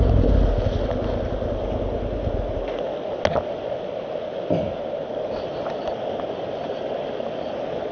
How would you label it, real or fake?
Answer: real